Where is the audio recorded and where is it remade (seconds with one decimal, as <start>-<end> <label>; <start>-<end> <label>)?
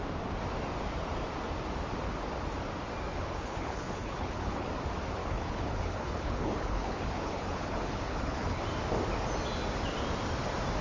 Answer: 0.0-3.1 recorded; 3.1-4.7 remade; 4.7-5.2 recorded; 5.2-8.6 remade; 8.6-10.8 recorded